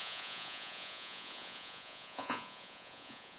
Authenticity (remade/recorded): remade